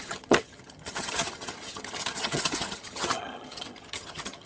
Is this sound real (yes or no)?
no